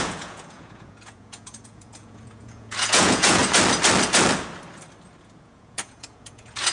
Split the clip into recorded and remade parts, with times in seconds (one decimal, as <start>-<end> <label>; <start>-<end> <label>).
0.0-3.4 remade; 3.4-5.2 recorded; 5.2-6.7 remade